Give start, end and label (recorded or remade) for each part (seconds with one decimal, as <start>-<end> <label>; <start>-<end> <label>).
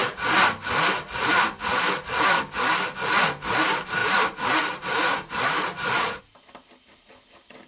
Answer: 0.0-4.0 recorded; 4.0-6.2 remade; 6.2-7.7 recorded